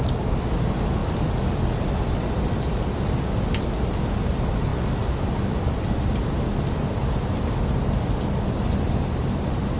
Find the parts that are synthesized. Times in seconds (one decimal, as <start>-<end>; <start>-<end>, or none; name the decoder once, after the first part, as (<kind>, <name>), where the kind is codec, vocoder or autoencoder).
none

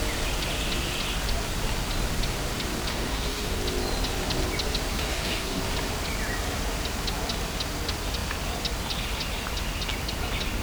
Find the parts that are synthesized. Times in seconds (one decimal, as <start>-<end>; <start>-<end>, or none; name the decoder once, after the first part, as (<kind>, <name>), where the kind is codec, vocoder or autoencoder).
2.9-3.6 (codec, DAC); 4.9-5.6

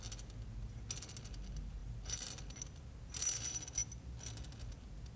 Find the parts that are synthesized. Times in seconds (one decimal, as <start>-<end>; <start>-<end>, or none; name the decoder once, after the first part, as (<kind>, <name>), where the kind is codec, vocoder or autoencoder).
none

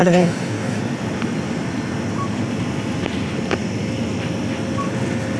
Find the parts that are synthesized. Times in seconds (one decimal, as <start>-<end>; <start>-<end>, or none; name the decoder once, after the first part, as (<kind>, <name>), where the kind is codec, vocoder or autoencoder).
0.0-0.8 (codec, DAC)

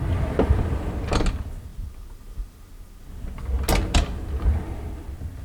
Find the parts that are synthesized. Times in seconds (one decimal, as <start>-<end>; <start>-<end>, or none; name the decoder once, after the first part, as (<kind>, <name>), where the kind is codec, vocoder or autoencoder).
none

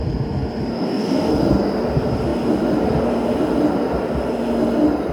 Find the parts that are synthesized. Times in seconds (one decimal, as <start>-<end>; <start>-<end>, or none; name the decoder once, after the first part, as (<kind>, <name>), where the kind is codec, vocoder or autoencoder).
0.7-1.3 (codec, DAC)